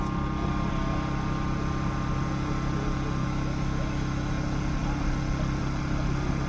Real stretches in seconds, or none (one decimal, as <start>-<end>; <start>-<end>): 0.0-3.2; 4.3-6.5